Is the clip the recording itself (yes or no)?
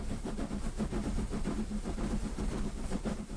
no